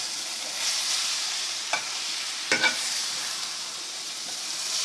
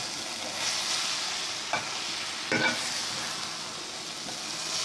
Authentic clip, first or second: second